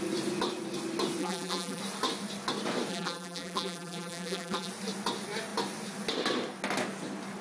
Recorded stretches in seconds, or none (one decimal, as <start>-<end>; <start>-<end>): 0.0-1.2; 1.8-2.9; 4.7-7.4